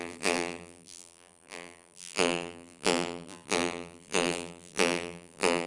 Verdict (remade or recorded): remade